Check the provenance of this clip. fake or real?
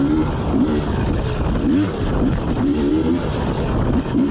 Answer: real